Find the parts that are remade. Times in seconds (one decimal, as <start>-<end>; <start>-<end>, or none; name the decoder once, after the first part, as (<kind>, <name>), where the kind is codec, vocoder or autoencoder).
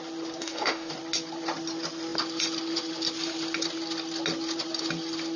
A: 0.4-0.9 (autoencoder, DAC-VAE)